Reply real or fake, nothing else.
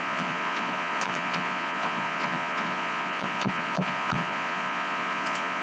fake